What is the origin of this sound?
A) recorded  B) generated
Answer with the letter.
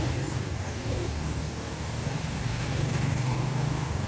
B